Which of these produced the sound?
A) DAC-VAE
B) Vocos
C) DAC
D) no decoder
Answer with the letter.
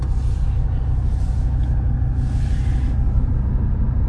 D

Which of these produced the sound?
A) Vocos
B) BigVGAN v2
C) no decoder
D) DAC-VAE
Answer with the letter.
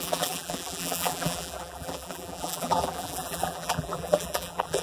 B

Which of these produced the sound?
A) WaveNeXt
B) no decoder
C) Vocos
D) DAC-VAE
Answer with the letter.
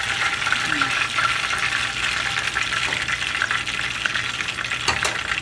B